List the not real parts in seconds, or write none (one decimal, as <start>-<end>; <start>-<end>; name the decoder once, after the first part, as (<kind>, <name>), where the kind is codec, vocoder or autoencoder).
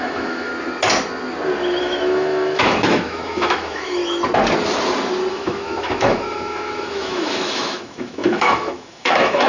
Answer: 0.0-0.5 (autoencoder, DAC-VAE); 1.8-4.0; 5.3-9.5